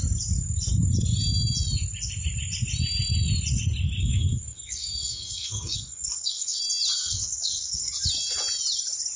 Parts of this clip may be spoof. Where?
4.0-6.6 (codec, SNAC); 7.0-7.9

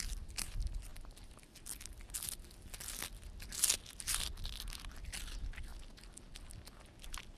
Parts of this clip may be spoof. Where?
none

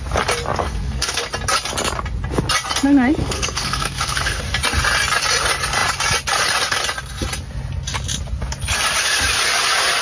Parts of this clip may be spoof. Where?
0.6-1.2 (codec, SNAC); 3.2-4.4

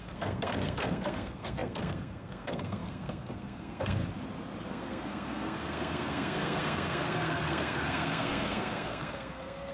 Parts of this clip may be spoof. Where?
0.0-4.0 (codec, SNAC); 4.7-9.7

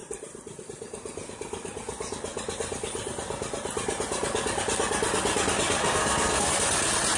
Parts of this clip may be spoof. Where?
5.8-6.5 (codec, SNAC)

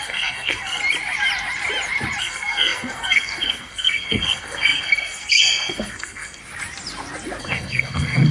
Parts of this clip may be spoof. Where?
0.0-0.8 (codec, SNAC); 2.2-6.4; 7.4-8.3